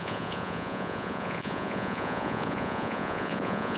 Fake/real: fake